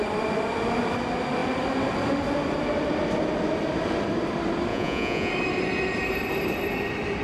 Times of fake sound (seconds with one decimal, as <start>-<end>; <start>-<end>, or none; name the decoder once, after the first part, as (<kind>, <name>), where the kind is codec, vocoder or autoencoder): 4.7-5.3 (vocoder, Vocos)